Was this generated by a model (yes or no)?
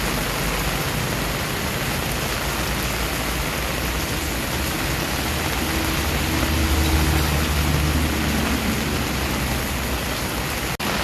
no